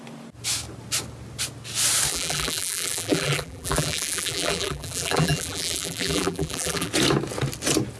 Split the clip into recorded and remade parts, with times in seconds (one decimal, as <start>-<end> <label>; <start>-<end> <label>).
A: 0.0-2.1 recorded; 2.1-6.9 remade; 6.9-8.0 recorded